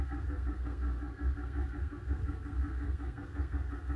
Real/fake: fake